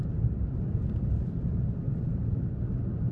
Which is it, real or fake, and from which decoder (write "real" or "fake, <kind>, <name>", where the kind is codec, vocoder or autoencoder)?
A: real